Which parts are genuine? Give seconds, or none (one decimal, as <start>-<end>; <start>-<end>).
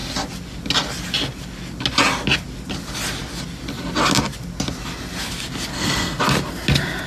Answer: 0.0-5.7; 6.2-7.1